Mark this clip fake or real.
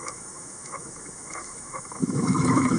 fake